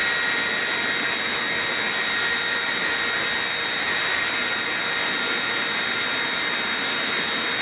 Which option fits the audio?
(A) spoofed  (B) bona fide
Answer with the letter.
B